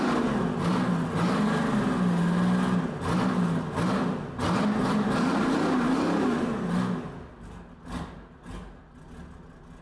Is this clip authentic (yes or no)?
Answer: yes